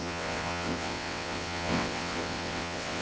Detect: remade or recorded remade